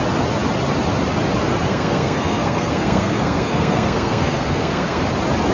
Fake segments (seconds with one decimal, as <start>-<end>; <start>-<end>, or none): 1.7-5.0